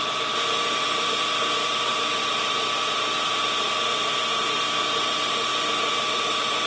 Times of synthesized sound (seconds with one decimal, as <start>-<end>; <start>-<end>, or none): none